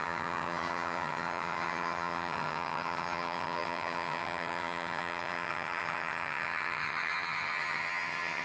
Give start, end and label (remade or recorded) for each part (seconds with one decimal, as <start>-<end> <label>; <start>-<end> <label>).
0.0-8.4 remade